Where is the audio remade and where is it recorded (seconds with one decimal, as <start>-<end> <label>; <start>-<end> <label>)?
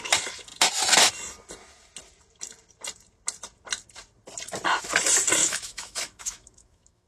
0.0-5.4 recorded; 5.4-7.1 remade